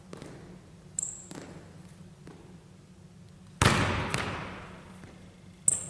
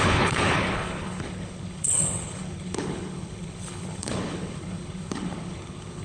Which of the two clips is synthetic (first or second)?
second